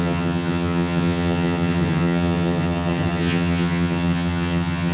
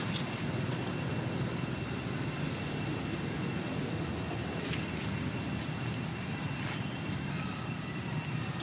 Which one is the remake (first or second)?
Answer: first